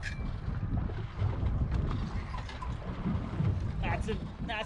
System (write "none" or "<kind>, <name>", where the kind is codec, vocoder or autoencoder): none